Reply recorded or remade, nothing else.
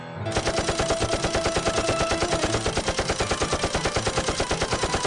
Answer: recorded